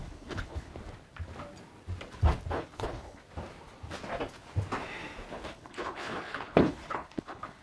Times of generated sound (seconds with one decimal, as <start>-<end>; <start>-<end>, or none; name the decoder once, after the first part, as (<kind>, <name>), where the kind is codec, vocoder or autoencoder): 0.0-0.7 (codec, HILCodec); 2.5-3.2; 5.3-7.6